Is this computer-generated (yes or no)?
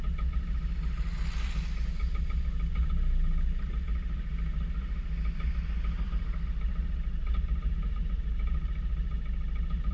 no